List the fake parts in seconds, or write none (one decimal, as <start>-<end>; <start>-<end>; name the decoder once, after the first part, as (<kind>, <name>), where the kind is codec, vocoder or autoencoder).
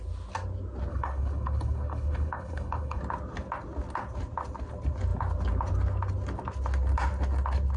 0.9-3.0 (codec, HILCodec)